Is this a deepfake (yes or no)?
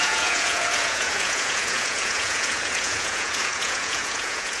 yes